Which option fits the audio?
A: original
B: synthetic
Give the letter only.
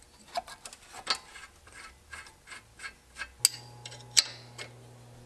A